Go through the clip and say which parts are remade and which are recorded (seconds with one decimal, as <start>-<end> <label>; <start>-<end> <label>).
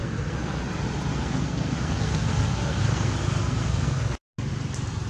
0.0-0.6 remade; 0.6-1.1 recorded; 1.1-4.2 remade; 4.2-5.1 recorded